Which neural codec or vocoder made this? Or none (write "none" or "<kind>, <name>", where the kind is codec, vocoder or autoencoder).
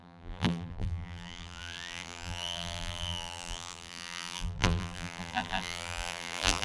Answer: vocoder, BigVGAN v2